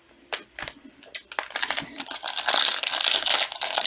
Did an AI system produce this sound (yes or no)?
no